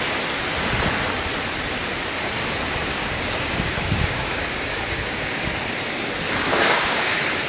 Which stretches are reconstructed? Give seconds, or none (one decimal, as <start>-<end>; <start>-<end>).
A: 2.9-5.3; 6.5-7.1